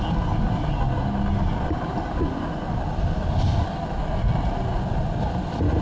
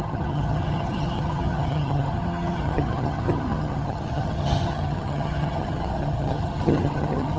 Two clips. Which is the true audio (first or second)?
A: first